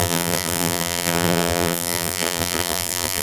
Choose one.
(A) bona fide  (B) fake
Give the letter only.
B